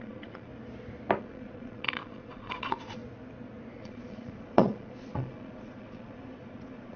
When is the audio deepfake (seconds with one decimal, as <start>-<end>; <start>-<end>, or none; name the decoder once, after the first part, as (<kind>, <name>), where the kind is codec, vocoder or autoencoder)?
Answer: 0.0-0.5 (vocoder, Vocos); 1.2-3.0; 3.7-7.0